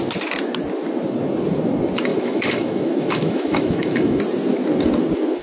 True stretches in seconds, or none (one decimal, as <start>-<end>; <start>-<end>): 0.0-2.1; 4.2-5.4